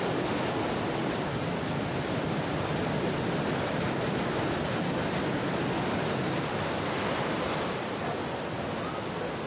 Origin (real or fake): real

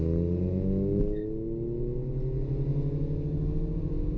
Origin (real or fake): real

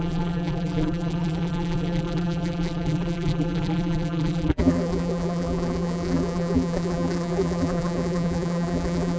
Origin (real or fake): fake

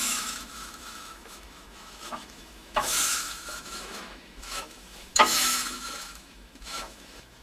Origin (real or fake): fake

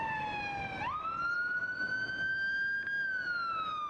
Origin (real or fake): real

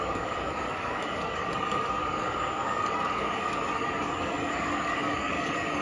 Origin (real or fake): fake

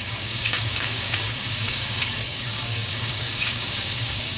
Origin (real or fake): fake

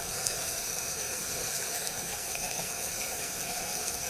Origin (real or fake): fake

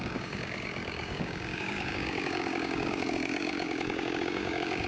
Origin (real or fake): fake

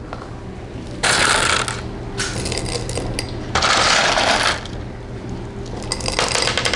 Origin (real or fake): real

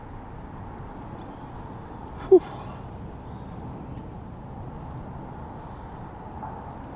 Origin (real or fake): real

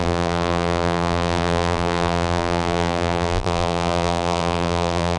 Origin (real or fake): fake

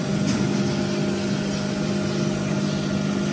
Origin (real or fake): real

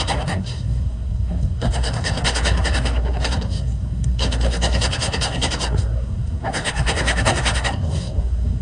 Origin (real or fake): fake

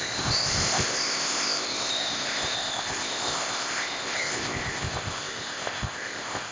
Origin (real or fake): fake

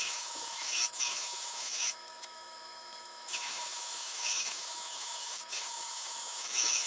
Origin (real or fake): fake